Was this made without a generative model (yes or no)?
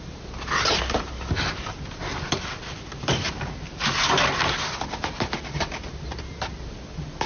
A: yes